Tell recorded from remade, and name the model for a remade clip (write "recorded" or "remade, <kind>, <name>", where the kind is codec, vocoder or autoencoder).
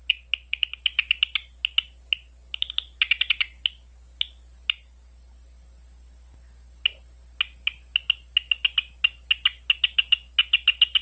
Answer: recorded